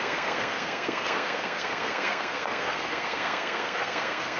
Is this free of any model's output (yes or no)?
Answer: no